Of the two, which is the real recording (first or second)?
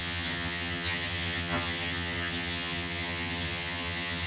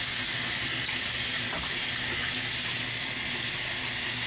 second